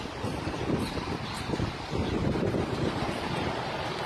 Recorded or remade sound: recorded